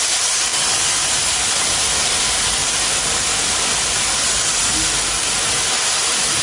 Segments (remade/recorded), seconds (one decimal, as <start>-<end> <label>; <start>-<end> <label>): 0.0-6.4 recorded

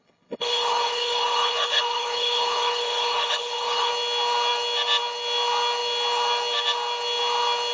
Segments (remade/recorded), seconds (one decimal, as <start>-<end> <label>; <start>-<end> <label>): 0.0-3.9 remade; 3.9-7.7 recorded

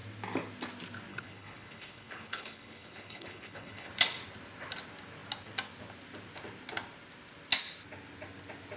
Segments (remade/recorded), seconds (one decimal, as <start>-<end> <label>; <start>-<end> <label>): 0.0-1.1 recorded; 1.1-3.9 remade; 3.9-8.8 recorded

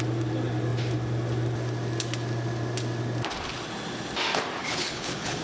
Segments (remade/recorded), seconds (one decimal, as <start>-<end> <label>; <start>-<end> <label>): 0.0-4.6 recorded; 4.6-5.4 remade

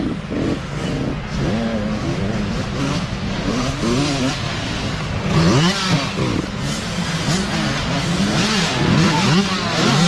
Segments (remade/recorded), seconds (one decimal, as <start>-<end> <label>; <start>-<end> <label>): 0.0-10.1 recorded

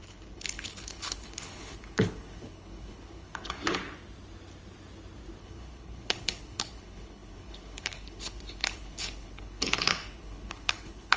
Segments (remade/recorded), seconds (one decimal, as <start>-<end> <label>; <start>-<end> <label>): 0.0-3.8 remade; 3.8-5.4 recorded; 5.4-11.2 remade